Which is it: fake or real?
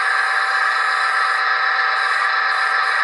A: real